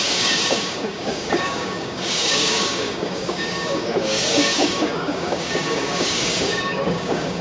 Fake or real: fake